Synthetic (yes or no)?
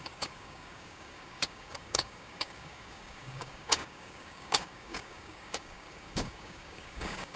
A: yes